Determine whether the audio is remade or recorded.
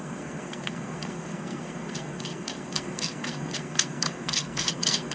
remade